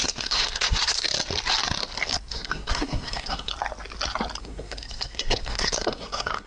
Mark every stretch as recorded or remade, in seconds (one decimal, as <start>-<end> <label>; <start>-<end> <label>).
0.0-1.1 remade; 1.1-2.3 recorded; 2.3-3.5 remade; 3.5-4.4 recorded; 4.4-6.5 remade